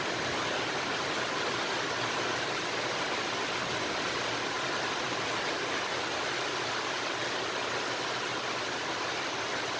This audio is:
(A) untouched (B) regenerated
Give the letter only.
A